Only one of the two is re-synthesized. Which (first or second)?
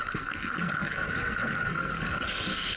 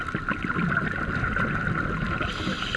first